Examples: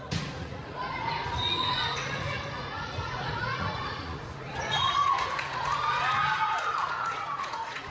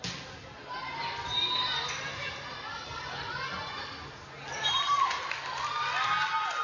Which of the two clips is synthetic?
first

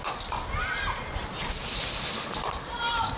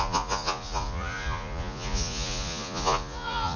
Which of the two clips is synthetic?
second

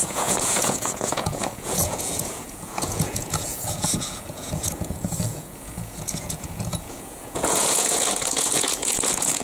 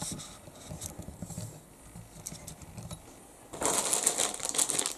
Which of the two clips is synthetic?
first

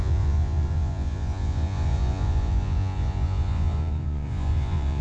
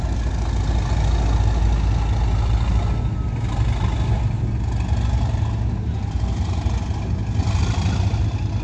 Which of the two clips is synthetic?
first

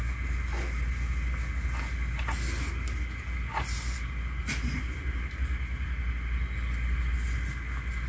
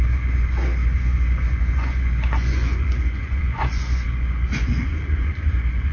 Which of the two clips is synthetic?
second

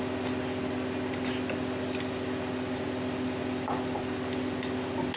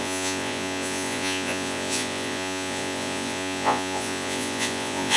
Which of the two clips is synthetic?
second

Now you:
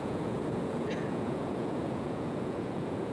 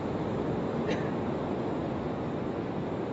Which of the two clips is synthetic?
first